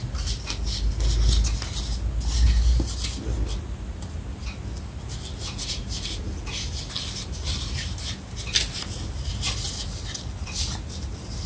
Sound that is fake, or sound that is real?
real